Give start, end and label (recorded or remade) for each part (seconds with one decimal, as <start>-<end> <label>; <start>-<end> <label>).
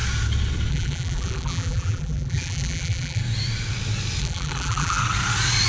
0.0-0.7 recorded; 0.7-3.2 remade; 3.2-4.2 recorded; 4.2-5.0 remade; 5.0-5.7 recorded